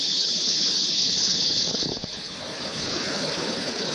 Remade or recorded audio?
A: remade